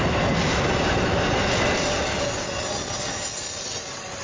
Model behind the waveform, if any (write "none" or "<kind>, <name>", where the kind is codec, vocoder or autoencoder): none